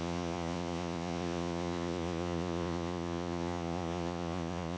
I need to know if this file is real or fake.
fake